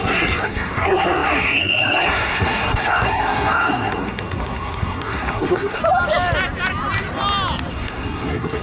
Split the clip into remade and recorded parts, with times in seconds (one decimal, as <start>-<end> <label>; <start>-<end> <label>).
0.0-5.8 remade; 5.8-7.7 recorded; 7.7-8.6 remade